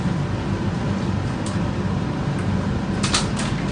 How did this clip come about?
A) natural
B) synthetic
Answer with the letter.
A